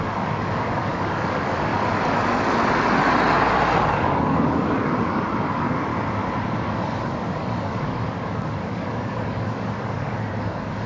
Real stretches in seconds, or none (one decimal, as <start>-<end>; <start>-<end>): 1.7-3.8; 5.9-6.7